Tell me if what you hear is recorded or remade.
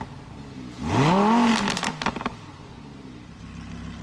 recorded